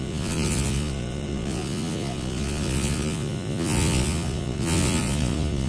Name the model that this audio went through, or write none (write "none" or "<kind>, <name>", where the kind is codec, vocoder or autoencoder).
vocoder, Vocos